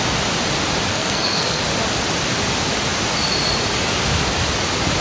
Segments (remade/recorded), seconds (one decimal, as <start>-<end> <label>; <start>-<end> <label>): 0.0-0.9 recorded; 0.9-1.6 remade; 1.6-5.0 recorded